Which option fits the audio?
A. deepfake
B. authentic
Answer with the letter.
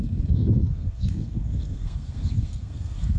A